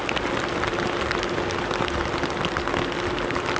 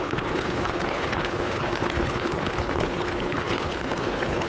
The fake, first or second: second